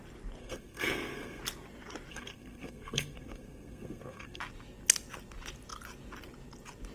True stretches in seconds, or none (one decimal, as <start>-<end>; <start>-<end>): 0.0-0.4; 1.4-2.1; 4.4-6.9